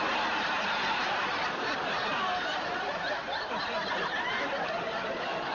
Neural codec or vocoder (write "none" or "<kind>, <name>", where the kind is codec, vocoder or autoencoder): none